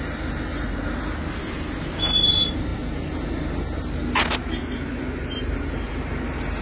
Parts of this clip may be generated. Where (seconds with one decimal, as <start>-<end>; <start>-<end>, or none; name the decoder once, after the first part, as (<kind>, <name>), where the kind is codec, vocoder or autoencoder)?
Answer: none